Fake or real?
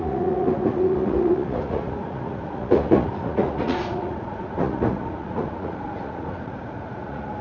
fake